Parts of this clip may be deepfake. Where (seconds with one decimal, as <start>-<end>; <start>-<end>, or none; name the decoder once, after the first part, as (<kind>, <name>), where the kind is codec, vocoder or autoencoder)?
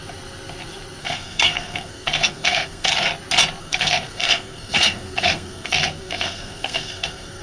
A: 1.0-2.9 (codec, SNAC); 3.6-7.4